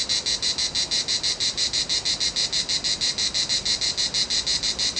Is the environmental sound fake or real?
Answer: real